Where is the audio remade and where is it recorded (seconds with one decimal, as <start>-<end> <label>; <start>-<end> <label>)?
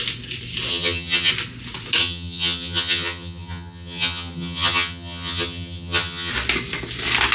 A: 0.0-0.7 recorded; 0.7-1.3 remade; 1.3-2.0 recorded; 2.0-6.3 remade; 6.3-7.3 recorded